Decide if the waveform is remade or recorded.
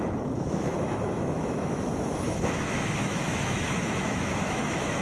remade